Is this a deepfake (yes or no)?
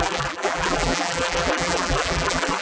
yes